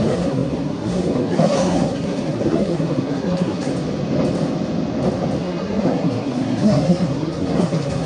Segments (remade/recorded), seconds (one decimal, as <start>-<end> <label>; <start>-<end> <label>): 0.0-3.7 remade; 3.7-5.4 recorded; 5.4-8.1 remade